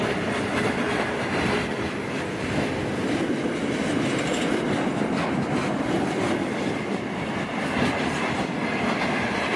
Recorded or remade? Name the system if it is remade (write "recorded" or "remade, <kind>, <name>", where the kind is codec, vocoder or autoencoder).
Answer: recorded